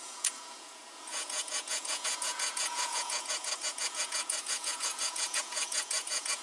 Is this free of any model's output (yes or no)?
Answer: no